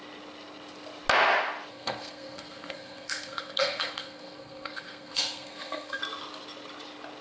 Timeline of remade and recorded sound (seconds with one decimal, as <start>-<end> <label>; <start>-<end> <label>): 0.0-1.7 recorded; 1.7-6.0 remade; 6.0-7.2 recorded